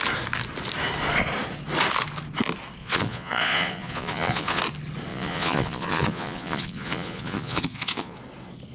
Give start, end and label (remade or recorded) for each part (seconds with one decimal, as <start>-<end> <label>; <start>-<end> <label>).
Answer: 0.0-2.8 recorded; 2.8-4.6 remade; 4.6-5.1 recorded; 5.1-8.2 remade; 8.2-8.7 recorded